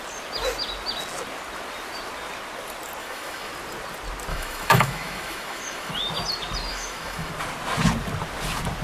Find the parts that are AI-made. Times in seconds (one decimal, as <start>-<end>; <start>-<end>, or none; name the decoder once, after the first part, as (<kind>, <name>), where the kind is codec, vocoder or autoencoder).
3.0-3.5 (autoencoder, DAC-VAE); 4.3-5.9; 6.7-7.3